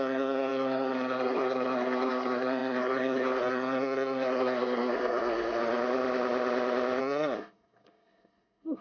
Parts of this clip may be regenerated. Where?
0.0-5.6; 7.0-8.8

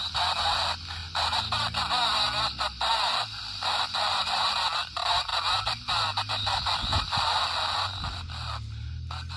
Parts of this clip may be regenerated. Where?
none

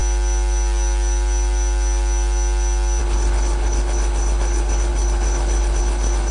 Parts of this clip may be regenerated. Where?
3.0-6.3

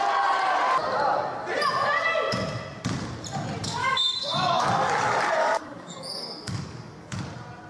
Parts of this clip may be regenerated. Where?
3.8-4.7; 5.4-7.2

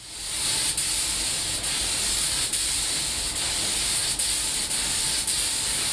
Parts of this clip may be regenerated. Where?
none

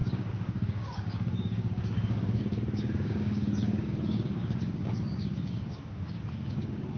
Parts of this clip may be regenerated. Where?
0.0-7.0

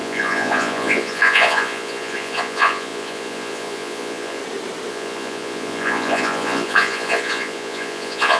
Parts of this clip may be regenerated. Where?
0.0-4.4; 4.9-8.4